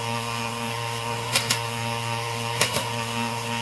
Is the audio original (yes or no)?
no